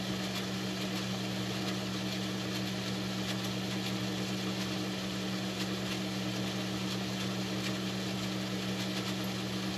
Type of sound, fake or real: real